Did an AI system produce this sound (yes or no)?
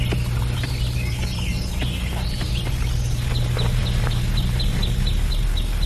no